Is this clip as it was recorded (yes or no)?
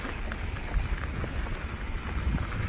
yes